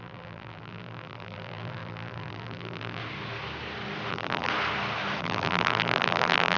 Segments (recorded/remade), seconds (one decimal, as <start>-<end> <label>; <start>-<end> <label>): 0.0-3.0 remade; 3.0-4.1 recorded; 4.1-4.5 remade; 4.5-5.2 recorded; 5.2-6.6 remade